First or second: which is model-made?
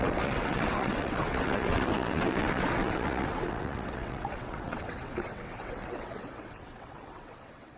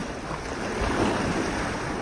first